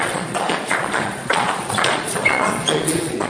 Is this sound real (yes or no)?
no